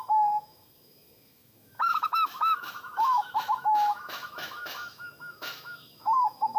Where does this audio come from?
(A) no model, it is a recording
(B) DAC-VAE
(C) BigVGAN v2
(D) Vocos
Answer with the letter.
B